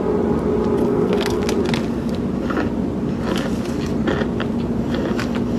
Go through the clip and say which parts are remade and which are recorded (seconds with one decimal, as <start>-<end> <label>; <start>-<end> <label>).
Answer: 0.0-0.8 recorded; 0.8-1.4 remade; 1.4-5.6 recorded